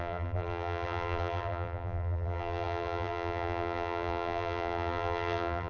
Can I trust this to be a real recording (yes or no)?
no